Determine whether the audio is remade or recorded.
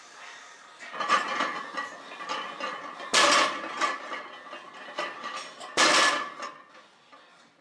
recorded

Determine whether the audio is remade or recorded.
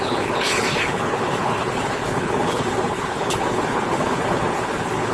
remade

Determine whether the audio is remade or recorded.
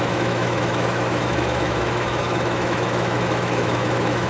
remade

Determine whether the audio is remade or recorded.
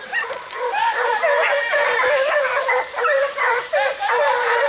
remade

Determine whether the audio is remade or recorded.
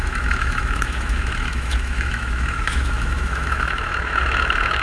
remade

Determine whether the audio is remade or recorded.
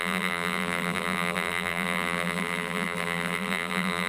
remade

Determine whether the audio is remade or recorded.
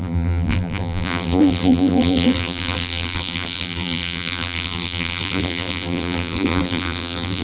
remade